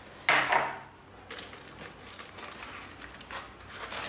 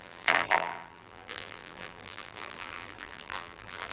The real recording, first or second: first